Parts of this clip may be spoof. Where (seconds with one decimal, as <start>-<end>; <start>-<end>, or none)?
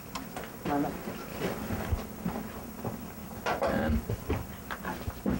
none